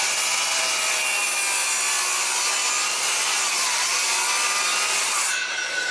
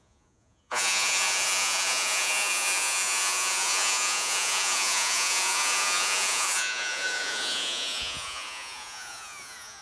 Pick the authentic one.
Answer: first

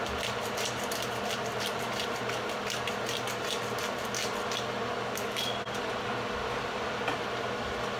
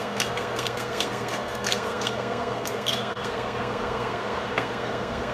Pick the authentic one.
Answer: first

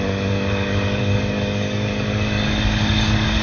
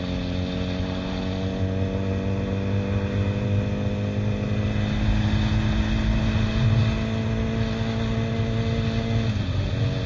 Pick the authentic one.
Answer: second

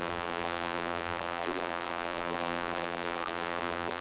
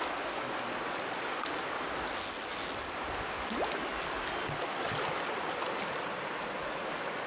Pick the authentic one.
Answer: second